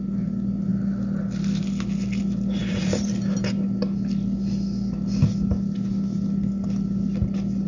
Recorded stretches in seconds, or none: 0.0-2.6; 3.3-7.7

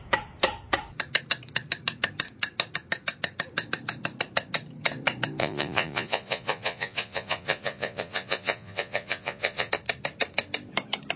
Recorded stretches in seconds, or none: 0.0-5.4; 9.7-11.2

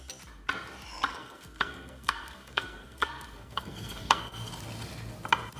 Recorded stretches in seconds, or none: 0.0-1.1; 4.5-5.6

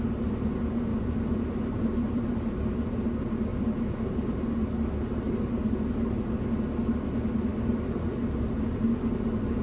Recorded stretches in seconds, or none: 0.0-0.9; 3.0-3.5; 4.0-7.5; 8.2-9.6

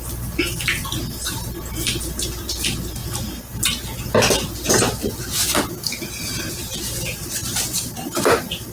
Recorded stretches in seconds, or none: 0.0-7.4